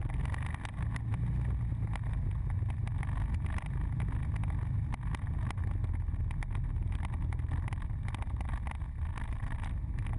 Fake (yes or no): no